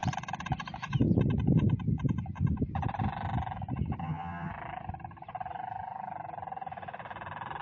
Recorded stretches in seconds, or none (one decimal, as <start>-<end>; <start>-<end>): 0.0-4.0; 4.5-7.6